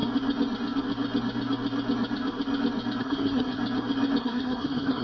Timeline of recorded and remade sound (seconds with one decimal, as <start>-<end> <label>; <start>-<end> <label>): 0.0-3.0 recorded; 3.0-3.6 remade; 3.6-4.2 recorded; 4.2-5.0 remade